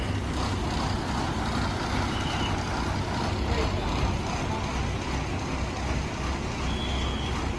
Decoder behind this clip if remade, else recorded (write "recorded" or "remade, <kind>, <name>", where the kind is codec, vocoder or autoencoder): recorded